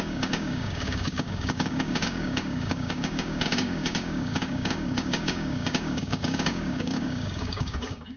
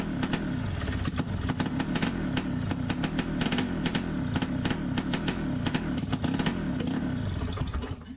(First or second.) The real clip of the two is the second